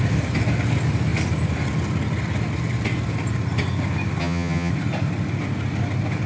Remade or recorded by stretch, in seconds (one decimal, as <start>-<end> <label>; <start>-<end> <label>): 0.0-4.2 recorded; 4.2-4.7 remade; 4.7-6.3 recorded